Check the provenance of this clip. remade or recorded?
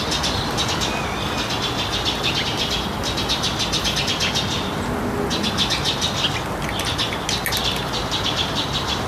recorded